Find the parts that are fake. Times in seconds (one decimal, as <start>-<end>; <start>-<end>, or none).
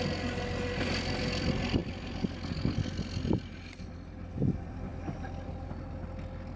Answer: none